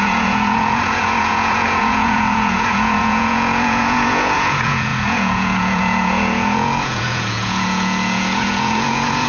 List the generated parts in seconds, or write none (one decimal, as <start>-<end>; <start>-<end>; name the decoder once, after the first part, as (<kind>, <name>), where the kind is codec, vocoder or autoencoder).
0.0-9.3 (vocoder, Vocos)